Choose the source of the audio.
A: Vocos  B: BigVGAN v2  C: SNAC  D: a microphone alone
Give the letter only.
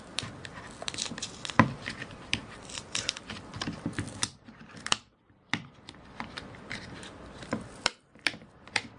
B